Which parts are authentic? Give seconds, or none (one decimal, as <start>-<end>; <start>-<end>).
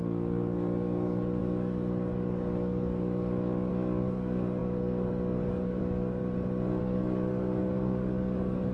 6.2-6.8